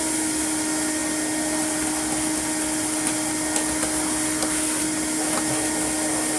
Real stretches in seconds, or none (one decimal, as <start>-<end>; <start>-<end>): 0.0-6.4